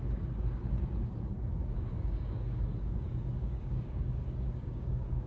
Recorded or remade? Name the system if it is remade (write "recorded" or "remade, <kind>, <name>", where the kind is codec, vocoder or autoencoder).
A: remade, codec, DAC